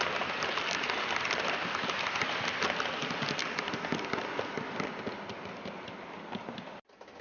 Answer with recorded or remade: remade